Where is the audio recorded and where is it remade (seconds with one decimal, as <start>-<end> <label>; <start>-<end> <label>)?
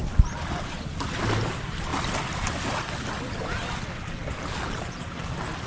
0.0-5.7 recorded